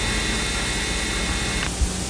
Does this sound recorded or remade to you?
recorded